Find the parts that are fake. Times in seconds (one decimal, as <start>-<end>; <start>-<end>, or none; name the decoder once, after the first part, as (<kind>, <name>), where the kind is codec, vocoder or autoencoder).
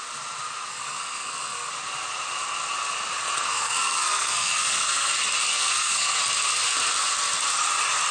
0.7-1.7 (codec, SNAC); 3.5-5.1; 5.5-6.2